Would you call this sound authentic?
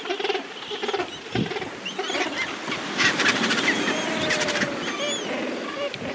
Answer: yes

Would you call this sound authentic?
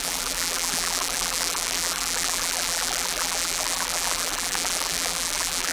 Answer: no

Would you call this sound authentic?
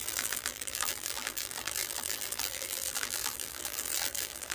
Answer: no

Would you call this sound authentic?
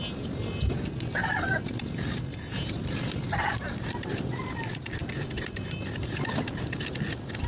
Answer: yes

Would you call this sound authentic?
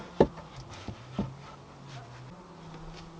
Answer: yes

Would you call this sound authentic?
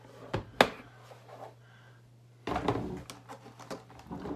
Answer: yes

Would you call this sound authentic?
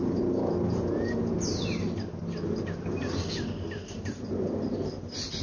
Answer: yes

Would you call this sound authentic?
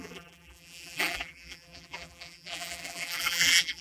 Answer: no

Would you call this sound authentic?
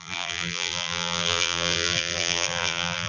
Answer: no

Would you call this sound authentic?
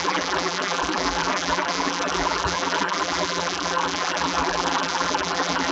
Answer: no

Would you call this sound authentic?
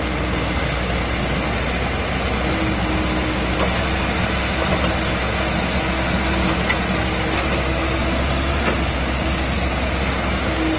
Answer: yes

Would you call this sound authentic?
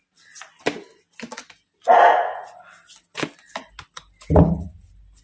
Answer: yes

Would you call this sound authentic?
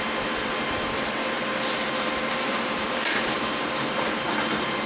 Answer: no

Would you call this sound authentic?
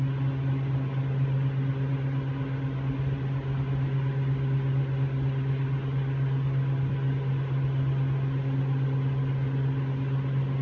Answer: yes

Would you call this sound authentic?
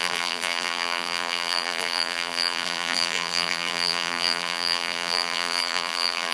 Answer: no